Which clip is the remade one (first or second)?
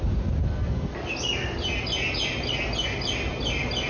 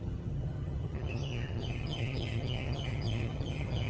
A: second